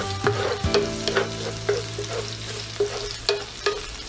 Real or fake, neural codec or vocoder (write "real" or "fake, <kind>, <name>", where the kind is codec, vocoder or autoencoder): real